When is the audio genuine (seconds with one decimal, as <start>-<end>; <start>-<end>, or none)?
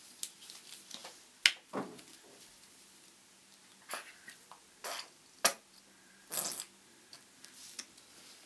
0.0-8.5